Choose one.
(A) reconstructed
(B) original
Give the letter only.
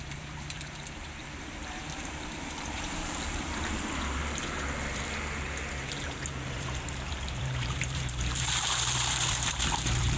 A